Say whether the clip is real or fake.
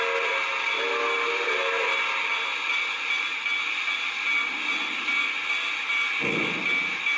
real